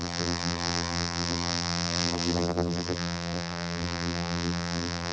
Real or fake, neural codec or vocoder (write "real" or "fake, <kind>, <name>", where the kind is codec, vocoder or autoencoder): fake, vocoder, BigVGAN v2